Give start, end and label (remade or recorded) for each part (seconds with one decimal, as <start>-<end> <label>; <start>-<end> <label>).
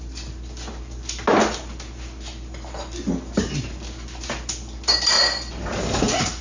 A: 0.0-6.4 recorded